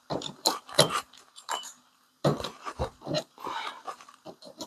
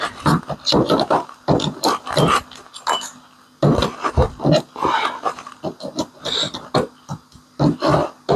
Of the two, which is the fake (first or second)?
first